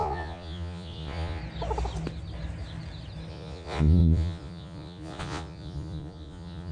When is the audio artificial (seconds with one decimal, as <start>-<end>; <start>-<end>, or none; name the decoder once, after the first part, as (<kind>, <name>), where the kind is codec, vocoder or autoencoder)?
0.0-1.4 (vocoder, Vocos); 3.3-6.7